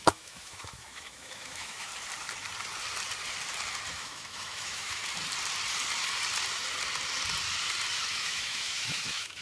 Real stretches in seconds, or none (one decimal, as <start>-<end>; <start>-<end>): 1.9-3.9; 5.0-8.1